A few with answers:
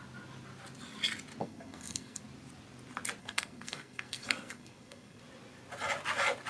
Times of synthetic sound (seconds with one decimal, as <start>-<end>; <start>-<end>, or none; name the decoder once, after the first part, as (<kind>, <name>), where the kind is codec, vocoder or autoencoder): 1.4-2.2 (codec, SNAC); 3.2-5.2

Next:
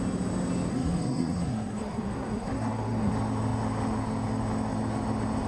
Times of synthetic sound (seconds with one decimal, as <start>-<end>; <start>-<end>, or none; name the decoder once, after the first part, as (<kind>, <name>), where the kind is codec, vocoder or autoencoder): 0.7-3.1 (codec, SNAC)

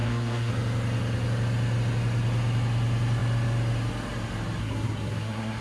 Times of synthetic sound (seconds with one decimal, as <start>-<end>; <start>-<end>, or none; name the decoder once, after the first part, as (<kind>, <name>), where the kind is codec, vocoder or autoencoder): 0.0-0.5 (codec, SNAC); 4.6-5.6

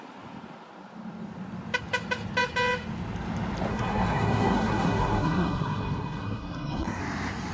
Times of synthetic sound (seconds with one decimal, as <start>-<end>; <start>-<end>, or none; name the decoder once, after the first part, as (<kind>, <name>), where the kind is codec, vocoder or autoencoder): 3.7-7.0 (codec, SNAC)